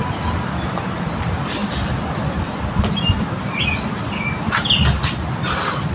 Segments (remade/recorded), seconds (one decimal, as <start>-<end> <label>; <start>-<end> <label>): 0.0-5.9 recorded